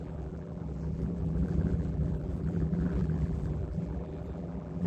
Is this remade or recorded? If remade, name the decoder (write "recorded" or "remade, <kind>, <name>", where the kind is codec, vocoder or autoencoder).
remade, vocoder, BigVGAN v2